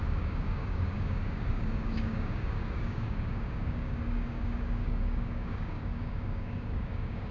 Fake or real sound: fake